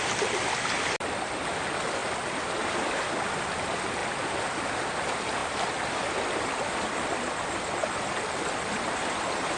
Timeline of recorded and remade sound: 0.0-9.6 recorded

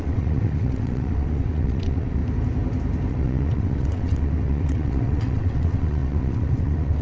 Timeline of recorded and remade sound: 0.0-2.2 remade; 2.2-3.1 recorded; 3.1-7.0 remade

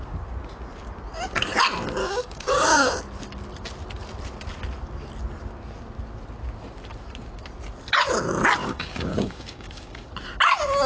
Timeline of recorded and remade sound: 0.0-2.0 recorded; 2.0-2.9 remade; 2.9-8.6 recorded; 8.6-10.1 remade; 10.1-10.9 recorded